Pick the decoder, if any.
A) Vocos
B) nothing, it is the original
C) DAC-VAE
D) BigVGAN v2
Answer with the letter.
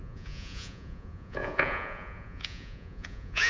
A